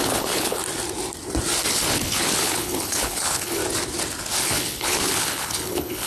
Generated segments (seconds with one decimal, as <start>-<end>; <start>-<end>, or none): 0.0-0.6; 1.7-3.6; 4.4-6.1